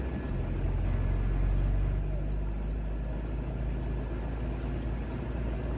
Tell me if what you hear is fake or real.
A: real